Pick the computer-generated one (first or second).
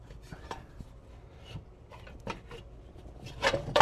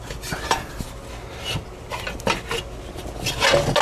first